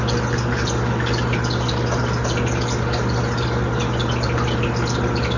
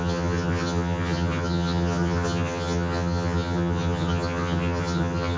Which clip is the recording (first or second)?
first